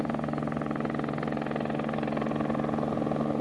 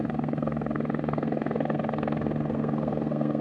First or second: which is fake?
second